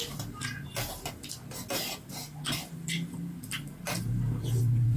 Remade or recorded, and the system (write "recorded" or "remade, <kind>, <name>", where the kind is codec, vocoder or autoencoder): recorded